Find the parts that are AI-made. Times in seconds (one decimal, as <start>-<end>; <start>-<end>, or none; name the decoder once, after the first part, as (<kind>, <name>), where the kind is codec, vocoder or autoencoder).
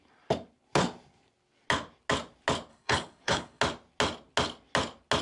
2.7-3.6 (codec, HILCodec)